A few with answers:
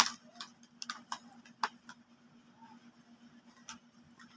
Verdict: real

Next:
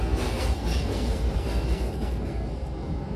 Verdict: fake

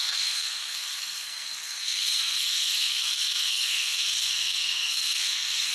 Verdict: fake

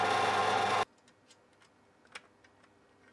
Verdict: real